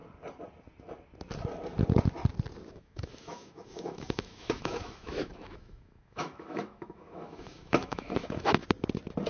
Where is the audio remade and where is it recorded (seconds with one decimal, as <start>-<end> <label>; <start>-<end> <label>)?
0.0-2.7 recorded; 2.7-8.6 remade; 8.6-9.3 recorded